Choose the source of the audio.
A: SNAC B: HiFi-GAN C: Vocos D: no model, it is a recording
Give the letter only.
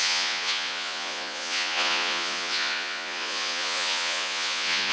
C